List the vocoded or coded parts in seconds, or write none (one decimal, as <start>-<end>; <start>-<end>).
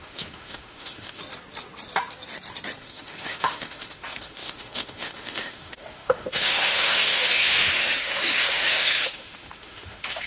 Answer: 0.0-1.2; 2.8-10.3